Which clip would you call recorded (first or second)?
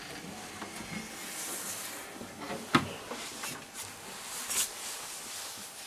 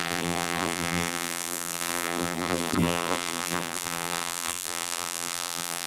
first